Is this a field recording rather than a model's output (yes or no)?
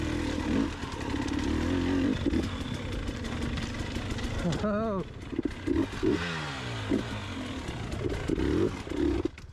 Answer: yes